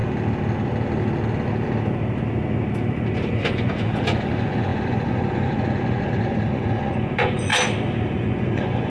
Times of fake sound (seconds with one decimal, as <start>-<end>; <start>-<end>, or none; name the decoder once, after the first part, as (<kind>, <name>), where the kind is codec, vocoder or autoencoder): 3.3-7.5 (vocoder, Vocos); 8.1-8.9